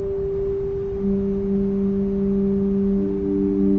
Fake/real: real